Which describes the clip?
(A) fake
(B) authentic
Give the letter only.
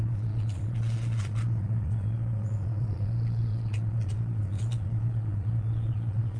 A